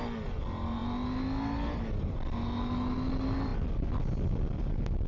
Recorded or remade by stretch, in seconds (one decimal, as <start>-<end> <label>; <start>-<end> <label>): 0.0-5.1 recorded